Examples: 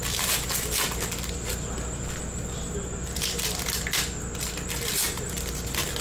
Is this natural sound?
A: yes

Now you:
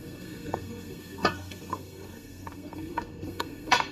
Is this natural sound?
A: no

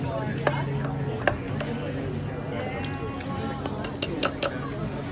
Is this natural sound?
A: yes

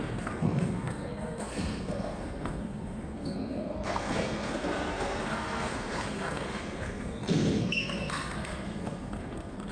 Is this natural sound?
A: no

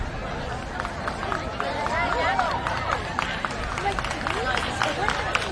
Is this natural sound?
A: yes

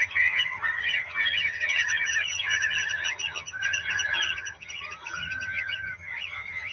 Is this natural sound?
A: no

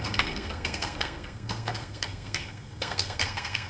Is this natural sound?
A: no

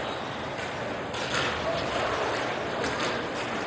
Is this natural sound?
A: yes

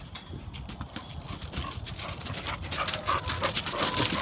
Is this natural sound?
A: yes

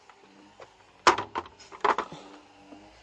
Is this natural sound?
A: yes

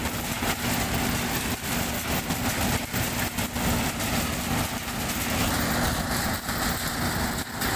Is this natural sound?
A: yes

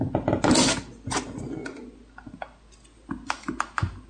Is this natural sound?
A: yes